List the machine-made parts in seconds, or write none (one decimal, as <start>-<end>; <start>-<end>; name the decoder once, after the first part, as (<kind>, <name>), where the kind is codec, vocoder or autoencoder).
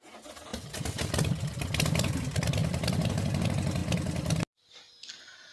2.6-3.4 (vocoder, BigVGAN v2)